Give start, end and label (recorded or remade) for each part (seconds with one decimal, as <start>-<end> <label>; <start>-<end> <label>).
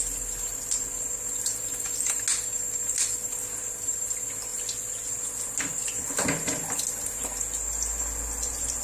0.0-8.8 recorded